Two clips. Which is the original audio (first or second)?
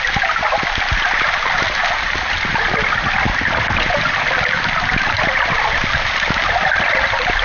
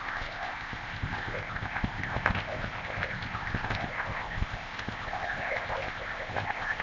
first